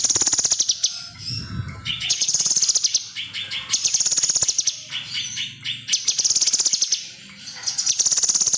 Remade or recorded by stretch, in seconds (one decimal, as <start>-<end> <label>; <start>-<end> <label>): 0.0-1.9 recorded; 1.9-2.5 remade; 2.5-8.6 recorded